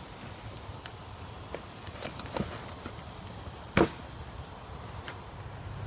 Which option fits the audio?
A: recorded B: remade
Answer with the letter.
A